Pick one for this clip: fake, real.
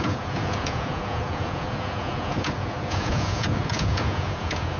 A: fake